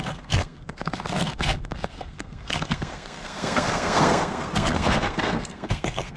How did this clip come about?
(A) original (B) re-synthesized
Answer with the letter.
B